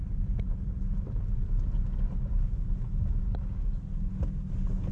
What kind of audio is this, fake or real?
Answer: real